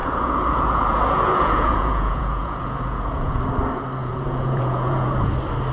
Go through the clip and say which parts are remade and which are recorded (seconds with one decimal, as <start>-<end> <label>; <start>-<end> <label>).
0.0-3.4 remade; 3.4-4.0 recorded; 4.0-5.3 remade; 5.3-5.7 recorded